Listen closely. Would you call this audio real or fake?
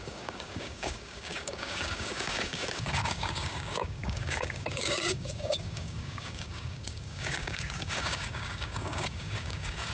fake